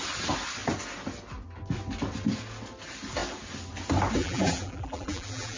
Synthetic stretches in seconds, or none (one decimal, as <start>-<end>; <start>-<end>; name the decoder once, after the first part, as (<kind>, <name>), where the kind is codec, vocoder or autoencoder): 4.2-5.6 (vocoder, BigVGAN v2)